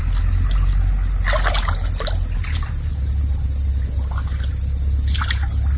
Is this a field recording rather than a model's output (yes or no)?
yes